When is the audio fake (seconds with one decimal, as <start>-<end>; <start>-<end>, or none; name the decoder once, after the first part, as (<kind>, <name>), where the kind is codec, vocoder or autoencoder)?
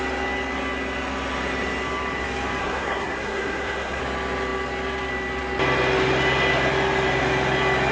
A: 2.6-4.0 (codec, SNAC)